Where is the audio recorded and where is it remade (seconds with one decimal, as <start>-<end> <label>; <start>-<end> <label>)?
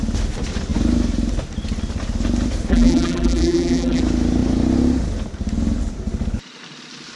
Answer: 0.0-2.7 recorded; 2.7-4.0 remade; 4.0-7.2 recorded